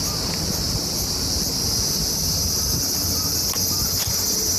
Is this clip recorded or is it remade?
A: recorded